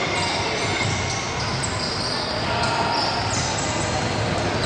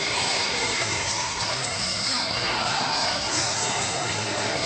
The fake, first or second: second